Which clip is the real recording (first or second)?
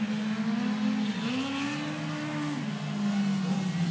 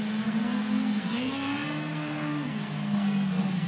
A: first